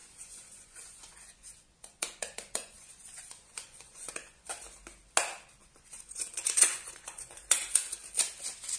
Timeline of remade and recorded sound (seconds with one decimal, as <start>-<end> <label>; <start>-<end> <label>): 0.0-4.5 remade; 4.5-5.6 recorded; 5.6-7.9 remade; 7.9-8.8 recorded